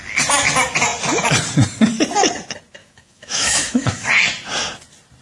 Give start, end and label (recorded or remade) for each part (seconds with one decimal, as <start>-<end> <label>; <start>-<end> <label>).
0.0-2.8 recorded; 2.8-4.1 remade; 4.1-5.2 recorded